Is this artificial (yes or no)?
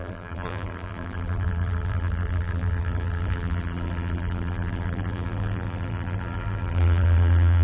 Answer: yes